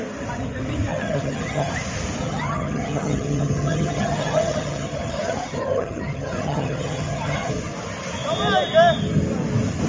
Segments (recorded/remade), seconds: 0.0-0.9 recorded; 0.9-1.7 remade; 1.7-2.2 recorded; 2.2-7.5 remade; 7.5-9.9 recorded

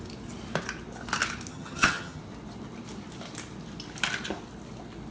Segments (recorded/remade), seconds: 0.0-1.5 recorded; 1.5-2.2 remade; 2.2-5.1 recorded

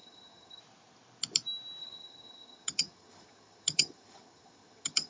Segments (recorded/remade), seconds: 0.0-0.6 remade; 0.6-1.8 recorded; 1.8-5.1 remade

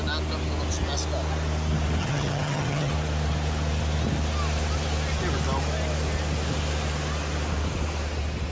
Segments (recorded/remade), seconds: 0.0-2.0 recorded; 2.0-2.9 remade; 2.9-8.5 recorded

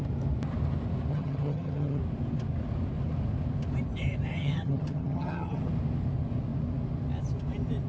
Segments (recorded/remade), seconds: 0.0-1.1 recorded; 1.1-2.0 remade; 2.0-4.3 recorded; 4.3-5.7 remade; 5.7-7.9 recorded

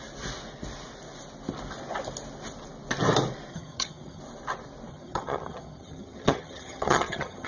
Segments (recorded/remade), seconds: 0.0-3.5 recorded; 3.5-4.2 remade; 4.2-4.9 recorded; 4.9-7.5 remade

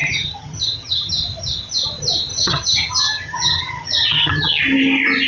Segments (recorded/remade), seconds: 0.0-1.1 remade; 1.1-2.3 recorded; 2.3-4.6 remade; 4.6-5.3 recorded